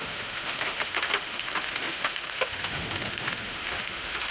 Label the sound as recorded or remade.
remade